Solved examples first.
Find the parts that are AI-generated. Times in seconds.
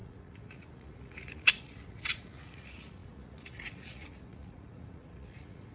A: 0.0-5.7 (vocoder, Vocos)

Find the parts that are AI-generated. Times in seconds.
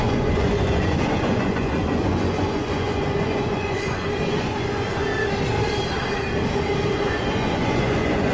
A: 0.0-5.1 (vocoder, Vocos); 6.9-8.3